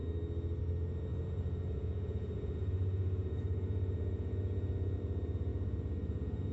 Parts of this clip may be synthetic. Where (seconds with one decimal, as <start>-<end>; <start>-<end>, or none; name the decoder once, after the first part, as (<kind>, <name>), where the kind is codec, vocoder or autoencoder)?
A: 1.1-5.0 (vocoder, Vocos); 5.5-6.5